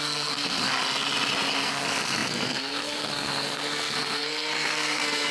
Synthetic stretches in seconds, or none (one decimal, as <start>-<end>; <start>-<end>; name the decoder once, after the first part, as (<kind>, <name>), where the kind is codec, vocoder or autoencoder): 0.0-0.7 (codec, SNAC); 1.5-5.3